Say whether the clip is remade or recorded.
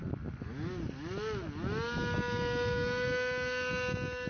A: recorded